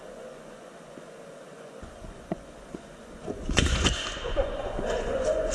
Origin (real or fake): fake